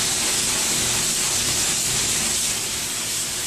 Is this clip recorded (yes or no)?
yes